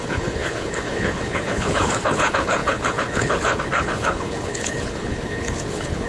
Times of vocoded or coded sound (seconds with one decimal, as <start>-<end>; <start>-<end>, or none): 0.0-6.1